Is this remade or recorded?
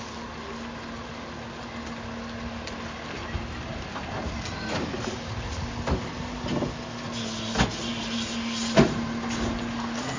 recorded